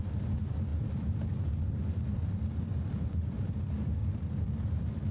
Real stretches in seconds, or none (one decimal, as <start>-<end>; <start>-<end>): 0.0-0.7; 3.5-4.0